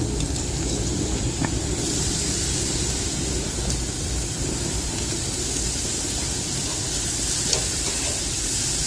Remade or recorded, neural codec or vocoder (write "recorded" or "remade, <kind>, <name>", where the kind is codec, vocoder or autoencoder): recorded